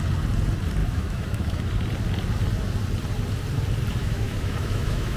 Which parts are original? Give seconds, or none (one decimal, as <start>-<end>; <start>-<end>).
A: 0.0-0.8; 1.7-4.0